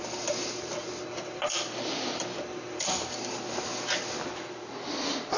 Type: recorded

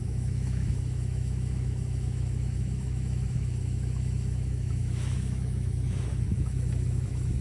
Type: remade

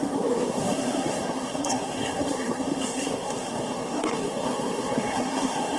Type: remade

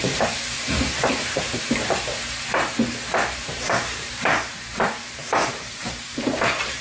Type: remade